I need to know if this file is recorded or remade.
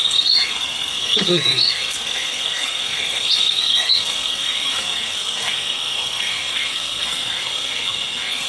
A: remade